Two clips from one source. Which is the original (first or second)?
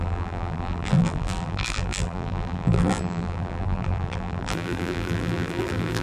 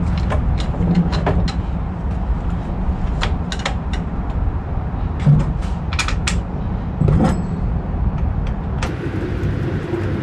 second